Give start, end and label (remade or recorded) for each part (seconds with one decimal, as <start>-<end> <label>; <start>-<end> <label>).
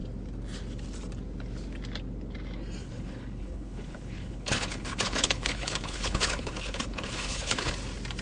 0.0-2.8 recorded; 2.8-7.7 remade; 7.7-8.2 recorded